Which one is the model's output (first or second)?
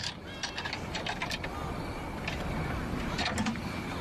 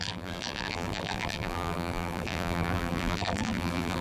second